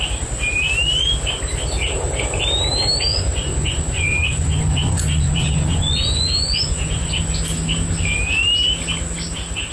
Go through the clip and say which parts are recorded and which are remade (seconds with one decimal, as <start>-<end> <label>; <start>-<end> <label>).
0.0-3.1 recorded; 3.1-7.2 remade; 7.2-9.7 recorded